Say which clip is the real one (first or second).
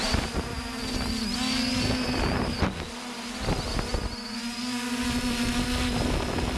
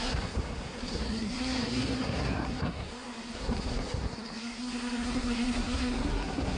first